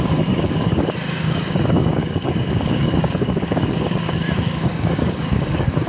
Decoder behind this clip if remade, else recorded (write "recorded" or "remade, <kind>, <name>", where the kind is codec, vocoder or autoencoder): remade, codec, DAC